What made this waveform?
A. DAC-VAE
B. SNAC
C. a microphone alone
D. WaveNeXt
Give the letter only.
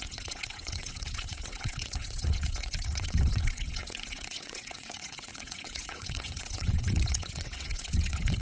D